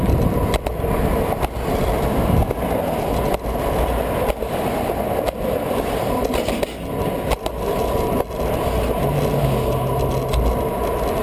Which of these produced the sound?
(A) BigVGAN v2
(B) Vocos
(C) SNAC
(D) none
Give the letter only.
D